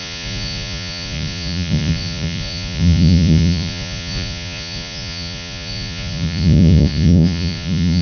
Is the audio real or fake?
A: fake